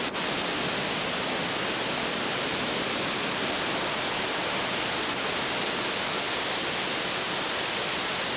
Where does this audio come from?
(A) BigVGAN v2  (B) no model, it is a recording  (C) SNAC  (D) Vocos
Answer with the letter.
B